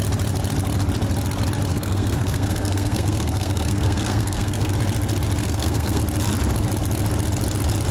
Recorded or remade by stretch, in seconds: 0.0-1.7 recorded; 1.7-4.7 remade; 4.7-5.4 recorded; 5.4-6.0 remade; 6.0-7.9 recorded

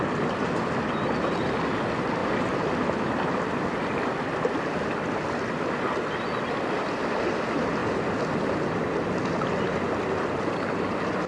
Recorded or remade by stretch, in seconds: 0.0-11.3 recorded

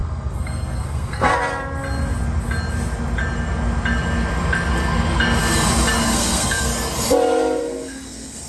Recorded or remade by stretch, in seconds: 0.0-1.3 remade; 1.3-6.0 recorded; 6.0-6.7 remade; 6.7-7.6 recorded; 7.6-8.5 remade

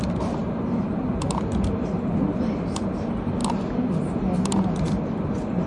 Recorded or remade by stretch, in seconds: 0.0-5.7 recorded